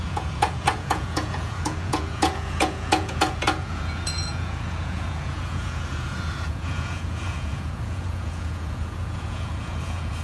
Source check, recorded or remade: remade